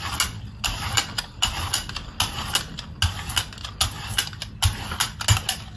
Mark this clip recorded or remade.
recorded